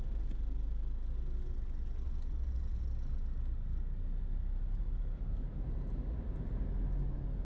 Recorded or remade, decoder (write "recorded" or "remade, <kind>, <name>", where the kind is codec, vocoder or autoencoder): recorded